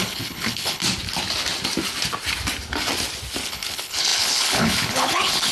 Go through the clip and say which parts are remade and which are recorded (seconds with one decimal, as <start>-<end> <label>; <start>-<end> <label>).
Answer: 0.0-0.8 remade; 0.8-3.5 recorded; 3.5-5.5 remade